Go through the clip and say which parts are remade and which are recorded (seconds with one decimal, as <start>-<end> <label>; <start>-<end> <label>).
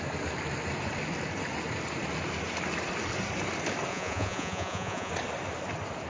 0.0-3.9 recorded; 3.9-5.1 remade; 5.1-6.1 recorded